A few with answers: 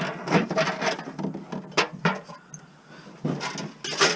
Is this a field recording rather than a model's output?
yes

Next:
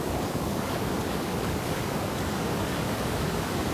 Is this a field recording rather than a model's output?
no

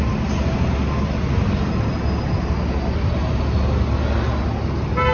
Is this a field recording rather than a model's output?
yes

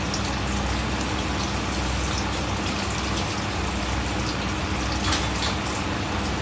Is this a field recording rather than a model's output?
yes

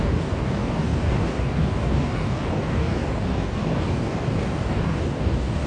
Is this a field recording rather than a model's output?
no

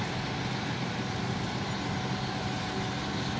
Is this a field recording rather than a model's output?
yes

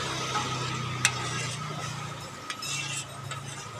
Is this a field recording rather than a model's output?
yes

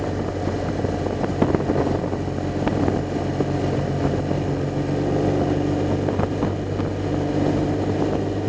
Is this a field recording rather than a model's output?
yes